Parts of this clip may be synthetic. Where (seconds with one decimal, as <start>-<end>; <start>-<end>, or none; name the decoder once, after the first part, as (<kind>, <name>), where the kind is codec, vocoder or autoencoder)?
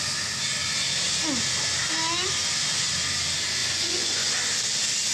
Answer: 3.6-4.3 (vocoder, Vocos)